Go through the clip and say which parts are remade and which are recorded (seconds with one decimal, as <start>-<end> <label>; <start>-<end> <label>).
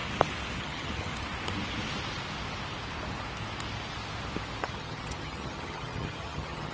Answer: 0.0-0.6 recorded; 0.6-1.1 remade; 1.1-4.6 recorded; 4.6-6.7 remade